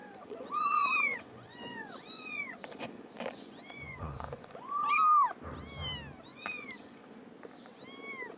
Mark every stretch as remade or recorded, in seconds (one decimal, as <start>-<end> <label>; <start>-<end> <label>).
0.0-4.9 remade; 4.9-6.3 recorded; 6.3-7.1 remade; 7.1-8.4 recorded